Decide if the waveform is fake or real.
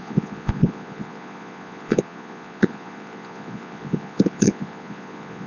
fake